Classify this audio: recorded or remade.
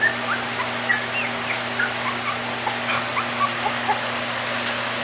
recorded